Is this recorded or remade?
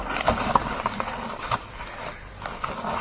recorded